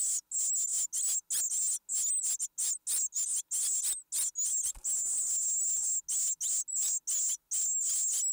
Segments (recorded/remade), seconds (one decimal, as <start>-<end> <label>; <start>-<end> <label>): 0.0-8.3 recorded